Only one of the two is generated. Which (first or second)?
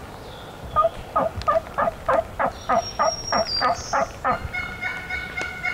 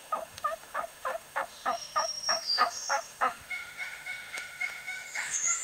second